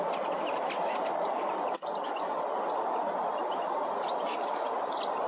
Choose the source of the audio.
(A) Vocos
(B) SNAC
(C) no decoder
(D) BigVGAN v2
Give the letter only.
D